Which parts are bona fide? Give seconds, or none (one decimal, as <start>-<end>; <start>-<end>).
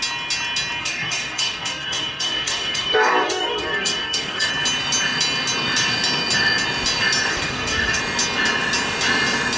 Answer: 0.0-0.8; 4.5-7.3; 8.0-9.6